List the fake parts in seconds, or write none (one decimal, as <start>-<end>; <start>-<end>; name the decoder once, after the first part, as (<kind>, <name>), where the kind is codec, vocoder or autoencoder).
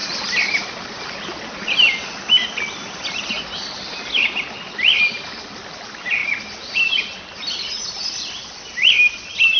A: none